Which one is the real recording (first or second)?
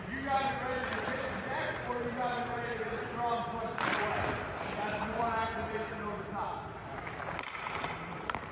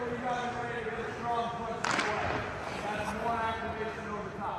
second